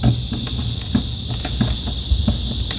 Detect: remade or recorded recorded